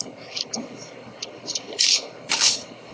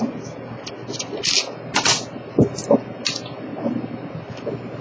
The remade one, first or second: first